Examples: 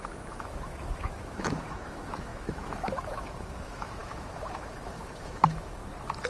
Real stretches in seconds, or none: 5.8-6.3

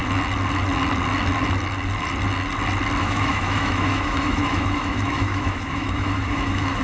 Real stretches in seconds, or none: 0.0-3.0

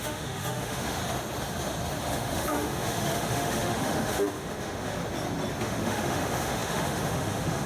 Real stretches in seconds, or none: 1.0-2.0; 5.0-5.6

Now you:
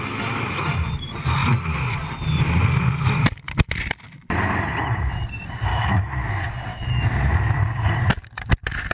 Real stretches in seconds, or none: 0.0-5.7; 6.3-6.7; 7.6-8.9

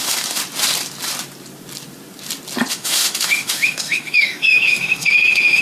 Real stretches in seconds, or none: 0.4-2.7

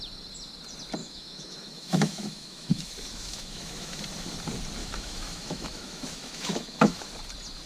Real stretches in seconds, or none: 0.0-1.0; 4.0-4.8; 7.1-7.7

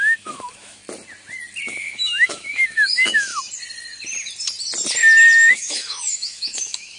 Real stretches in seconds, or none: 0.8-1.7; 3.3-5.5